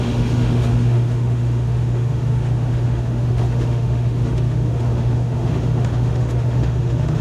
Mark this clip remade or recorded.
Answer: remade